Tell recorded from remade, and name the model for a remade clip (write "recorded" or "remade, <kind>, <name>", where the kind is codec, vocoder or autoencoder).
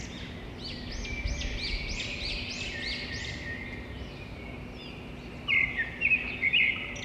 recorded